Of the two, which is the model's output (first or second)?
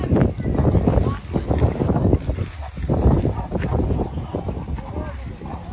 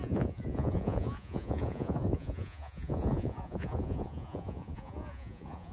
second